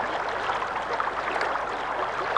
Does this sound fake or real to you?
real